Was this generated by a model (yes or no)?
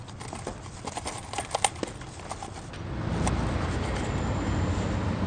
no